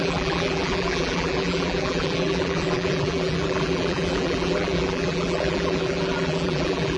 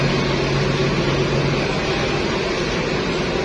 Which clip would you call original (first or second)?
second